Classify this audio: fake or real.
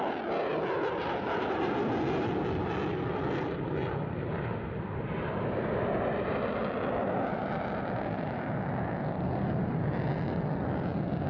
real